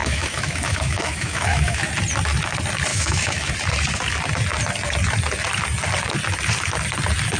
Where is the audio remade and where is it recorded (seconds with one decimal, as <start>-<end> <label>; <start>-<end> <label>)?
0.0-1.9 remade; 1.9-2.9 recorded; 2.9-3.5 remade; 3.5-7.4 recorded